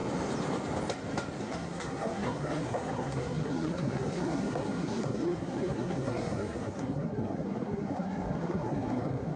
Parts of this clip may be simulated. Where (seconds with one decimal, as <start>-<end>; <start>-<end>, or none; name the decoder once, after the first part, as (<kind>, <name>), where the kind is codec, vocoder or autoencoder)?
1.4-9.4 (codec, SNAC)